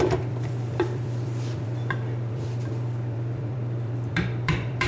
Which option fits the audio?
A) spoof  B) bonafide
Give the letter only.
A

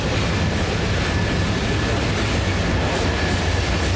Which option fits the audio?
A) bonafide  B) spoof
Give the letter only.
A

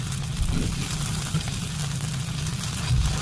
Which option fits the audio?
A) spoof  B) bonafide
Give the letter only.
B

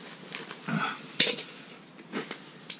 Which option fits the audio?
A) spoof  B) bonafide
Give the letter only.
B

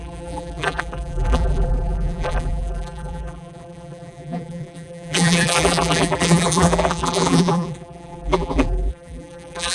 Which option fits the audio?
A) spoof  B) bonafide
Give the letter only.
A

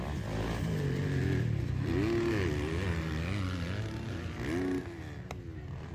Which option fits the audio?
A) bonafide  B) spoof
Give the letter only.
A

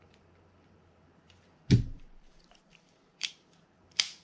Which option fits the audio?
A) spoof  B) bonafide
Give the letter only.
A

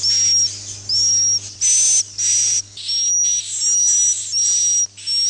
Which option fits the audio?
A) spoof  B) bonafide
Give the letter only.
B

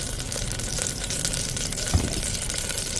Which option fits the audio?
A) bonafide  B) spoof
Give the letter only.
B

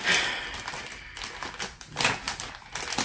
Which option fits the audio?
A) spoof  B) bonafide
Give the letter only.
A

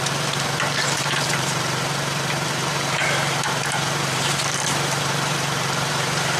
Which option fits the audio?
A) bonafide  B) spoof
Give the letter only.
B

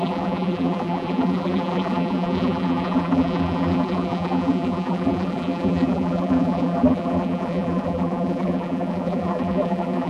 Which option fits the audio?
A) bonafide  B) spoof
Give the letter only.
B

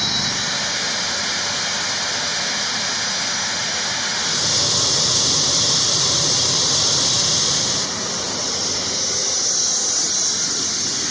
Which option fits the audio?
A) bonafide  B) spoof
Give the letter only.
A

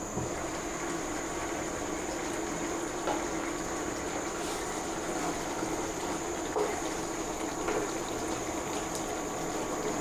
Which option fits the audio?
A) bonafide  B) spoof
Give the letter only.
A